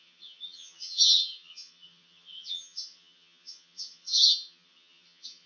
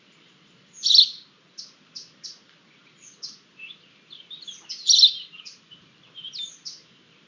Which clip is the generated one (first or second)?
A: first